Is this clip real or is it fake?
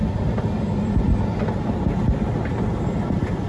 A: real